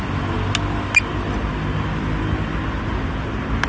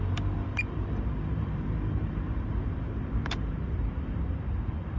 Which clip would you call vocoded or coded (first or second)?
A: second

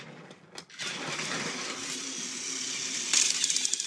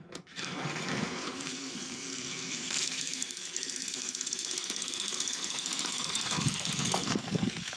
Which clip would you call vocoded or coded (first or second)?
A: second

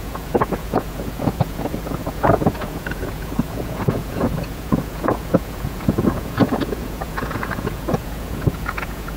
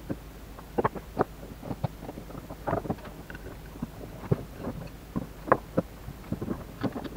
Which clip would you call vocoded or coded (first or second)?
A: first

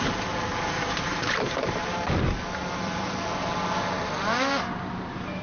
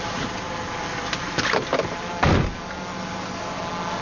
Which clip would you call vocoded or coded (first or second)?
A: first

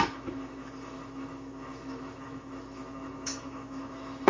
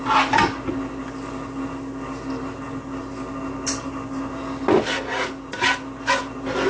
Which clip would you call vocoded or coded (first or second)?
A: first